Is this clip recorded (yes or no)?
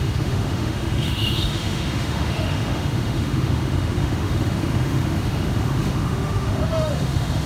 no